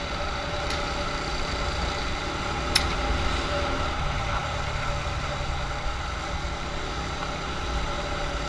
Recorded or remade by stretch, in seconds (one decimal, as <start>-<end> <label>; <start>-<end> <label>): 0.0-8.5 recorded